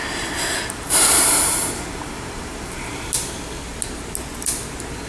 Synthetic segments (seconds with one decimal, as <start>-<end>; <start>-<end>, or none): 0.0-3.1